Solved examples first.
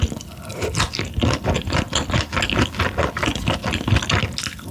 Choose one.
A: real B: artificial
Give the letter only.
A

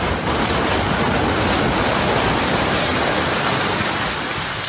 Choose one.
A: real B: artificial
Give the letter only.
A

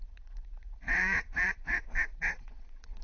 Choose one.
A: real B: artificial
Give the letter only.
B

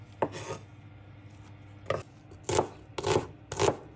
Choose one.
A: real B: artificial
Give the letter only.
A